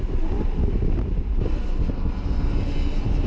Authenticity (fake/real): real